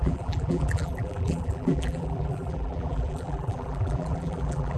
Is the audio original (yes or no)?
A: no